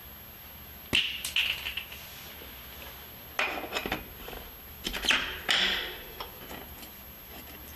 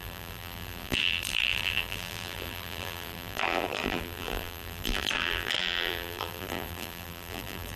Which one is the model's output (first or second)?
second